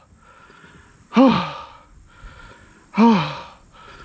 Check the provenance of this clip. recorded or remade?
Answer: recorded